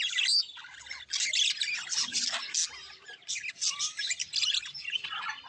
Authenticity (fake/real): real